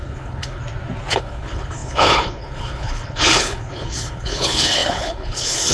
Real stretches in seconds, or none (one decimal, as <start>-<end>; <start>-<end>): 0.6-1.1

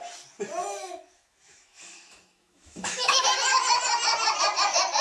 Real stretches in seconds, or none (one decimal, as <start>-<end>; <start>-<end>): 0.0-0.6; 3.2-5.0

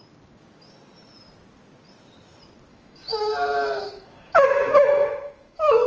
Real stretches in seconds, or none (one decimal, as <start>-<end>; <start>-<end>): 0.0-2.7

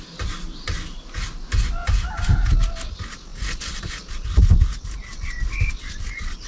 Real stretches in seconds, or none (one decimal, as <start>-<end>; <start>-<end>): 0.0-3.3; 4.4-6.5